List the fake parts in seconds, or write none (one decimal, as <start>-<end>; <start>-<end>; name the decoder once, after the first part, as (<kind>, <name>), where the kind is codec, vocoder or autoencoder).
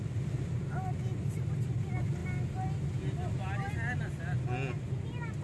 none